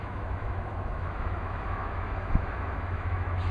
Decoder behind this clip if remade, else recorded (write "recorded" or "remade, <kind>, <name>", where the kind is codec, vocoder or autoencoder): remade, autoencoder, DAC-VAE